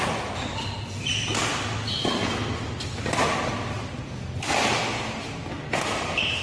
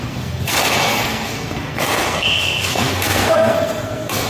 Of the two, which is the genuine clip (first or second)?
first